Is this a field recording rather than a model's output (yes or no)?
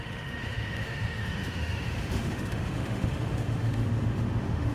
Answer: no